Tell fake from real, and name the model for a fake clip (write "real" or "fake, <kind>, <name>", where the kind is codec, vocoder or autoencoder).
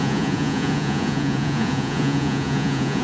fake, vocoder, Vocos